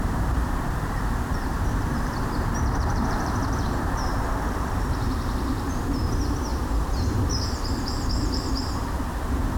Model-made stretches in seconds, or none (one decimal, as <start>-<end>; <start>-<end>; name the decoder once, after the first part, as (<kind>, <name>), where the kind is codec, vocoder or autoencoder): 0.0-3.4 (vocoder, BigVGAN v2); 4.6-9.6